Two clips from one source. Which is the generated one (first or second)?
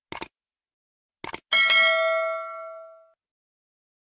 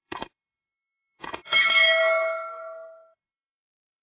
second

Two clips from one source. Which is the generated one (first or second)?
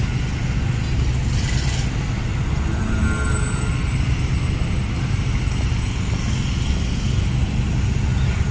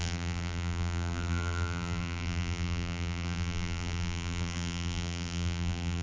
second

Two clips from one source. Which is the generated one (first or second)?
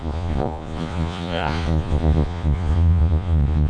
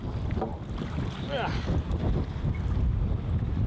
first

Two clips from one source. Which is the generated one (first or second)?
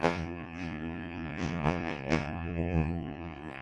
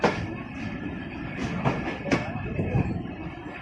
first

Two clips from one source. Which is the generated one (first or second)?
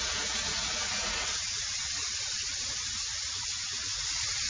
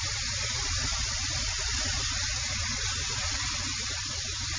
first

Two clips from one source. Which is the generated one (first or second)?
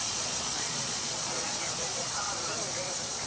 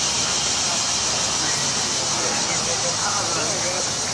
first